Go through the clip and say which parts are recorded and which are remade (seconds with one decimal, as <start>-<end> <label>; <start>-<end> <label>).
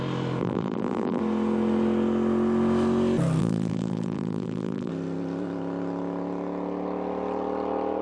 0.0-0.4 recorded; 0.4-1.2 remade; 1.2-3.4 recorded; 3.4-4.9 remade; 4.9-8.0 recorded